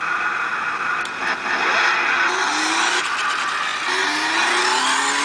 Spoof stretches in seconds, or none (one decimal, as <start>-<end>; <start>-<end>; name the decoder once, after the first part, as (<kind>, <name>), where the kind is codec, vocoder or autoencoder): none